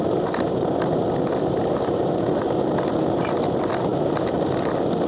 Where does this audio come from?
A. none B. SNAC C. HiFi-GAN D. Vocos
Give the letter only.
A